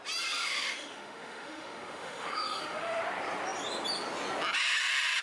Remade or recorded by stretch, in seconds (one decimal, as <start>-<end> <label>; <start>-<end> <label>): 0.0-0.4 recorded; 0.4-3.0 remade; 3.0-5.2 recorded